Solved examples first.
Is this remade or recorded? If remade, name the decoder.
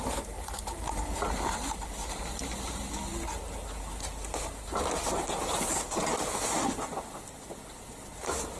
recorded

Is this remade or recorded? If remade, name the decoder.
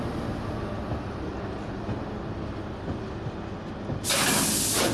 recorded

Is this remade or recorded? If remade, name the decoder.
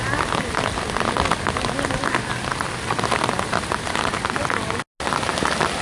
recorded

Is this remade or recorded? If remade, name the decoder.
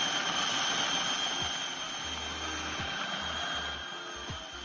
recorded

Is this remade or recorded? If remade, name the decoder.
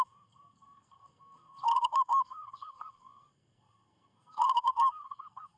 remade, codec, SNAC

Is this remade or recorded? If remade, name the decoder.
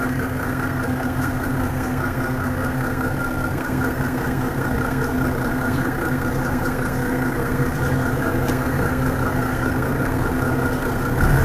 remade, codec, SNAC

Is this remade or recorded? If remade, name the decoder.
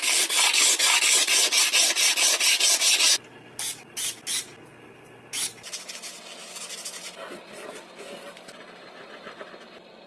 recorded